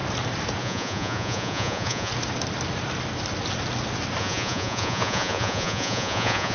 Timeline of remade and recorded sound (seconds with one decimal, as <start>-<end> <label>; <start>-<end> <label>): 0.0-0.6 recorded; 0.6-2.1 remade; 2.1-4.2 recorded; 4.2-6.5 remade